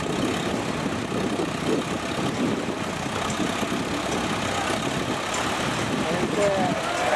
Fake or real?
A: real